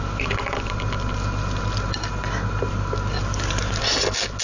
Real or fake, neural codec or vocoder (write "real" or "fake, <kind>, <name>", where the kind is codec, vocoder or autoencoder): real